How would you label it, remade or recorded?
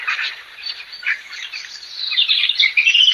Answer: remade